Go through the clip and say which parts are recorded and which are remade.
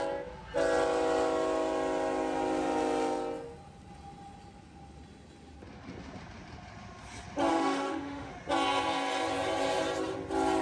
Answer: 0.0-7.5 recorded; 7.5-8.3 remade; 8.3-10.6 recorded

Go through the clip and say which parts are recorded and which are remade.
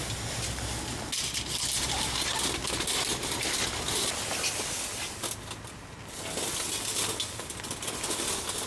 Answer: 0.0-8.7 recorded